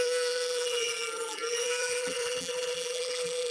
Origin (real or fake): fake